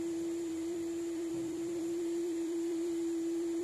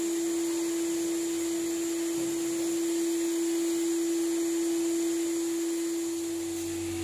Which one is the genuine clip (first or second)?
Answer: second